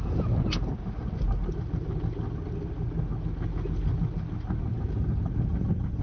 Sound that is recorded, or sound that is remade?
recorded